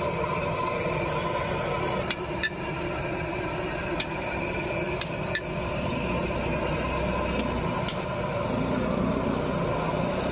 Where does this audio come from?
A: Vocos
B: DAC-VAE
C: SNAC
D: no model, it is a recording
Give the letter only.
D